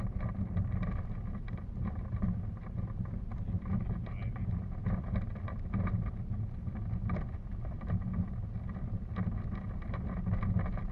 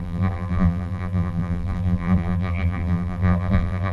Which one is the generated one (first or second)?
second